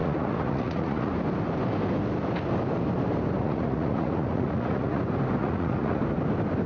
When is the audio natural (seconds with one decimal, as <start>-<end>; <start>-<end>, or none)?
1.1-3.4; 5.0-5.4; 6.0-6.7